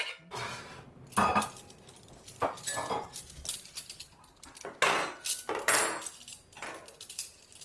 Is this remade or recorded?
recorded